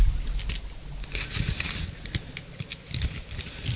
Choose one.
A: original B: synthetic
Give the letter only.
A